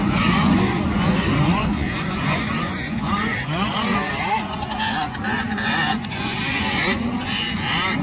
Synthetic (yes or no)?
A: yes